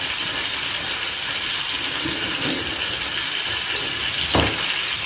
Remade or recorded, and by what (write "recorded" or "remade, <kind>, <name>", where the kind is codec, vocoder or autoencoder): recorded